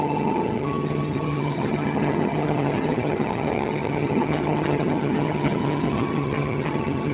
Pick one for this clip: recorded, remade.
remade